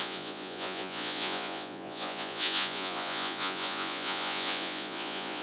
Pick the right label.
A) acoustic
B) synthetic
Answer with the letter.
B